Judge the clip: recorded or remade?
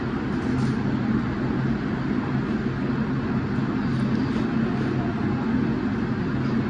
recorded